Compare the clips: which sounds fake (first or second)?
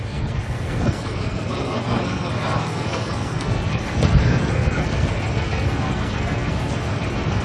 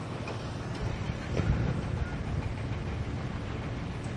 first